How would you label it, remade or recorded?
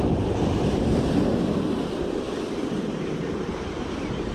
remade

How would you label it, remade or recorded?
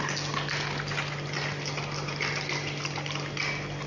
recorded